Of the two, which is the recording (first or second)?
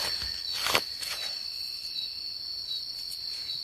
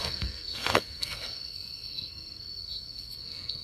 first